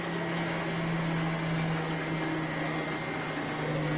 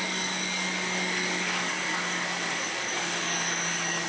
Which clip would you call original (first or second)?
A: first